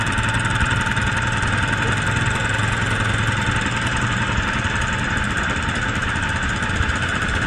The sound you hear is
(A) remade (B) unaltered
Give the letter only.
B